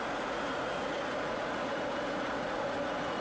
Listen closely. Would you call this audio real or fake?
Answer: fake